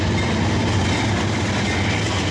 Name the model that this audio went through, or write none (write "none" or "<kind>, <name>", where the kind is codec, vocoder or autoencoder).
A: none